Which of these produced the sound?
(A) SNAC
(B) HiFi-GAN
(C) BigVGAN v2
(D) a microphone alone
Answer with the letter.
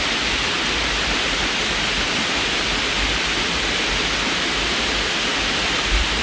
D